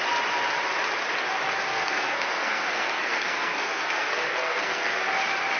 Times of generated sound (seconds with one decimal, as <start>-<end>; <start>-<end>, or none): 1.7-5.1